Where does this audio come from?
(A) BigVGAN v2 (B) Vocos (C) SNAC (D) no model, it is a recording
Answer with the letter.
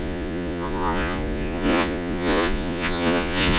B